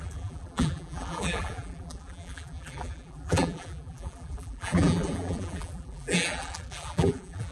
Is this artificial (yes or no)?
yes